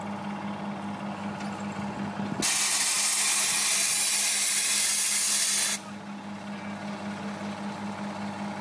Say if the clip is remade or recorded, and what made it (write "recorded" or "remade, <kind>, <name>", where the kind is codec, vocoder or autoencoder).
recorded